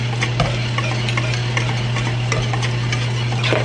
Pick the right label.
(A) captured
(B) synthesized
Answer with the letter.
A